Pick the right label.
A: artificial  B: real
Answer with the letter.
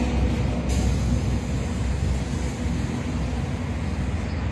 B